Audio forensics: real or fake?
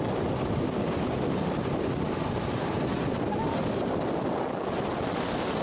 real